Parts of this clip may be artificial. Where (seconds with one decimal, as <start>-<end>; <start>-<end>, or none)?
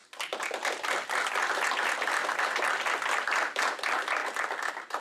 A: none